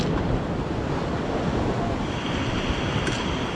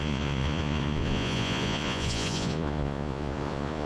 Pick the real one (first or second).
first